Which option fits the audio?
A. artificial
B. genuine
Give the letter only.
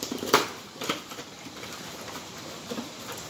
A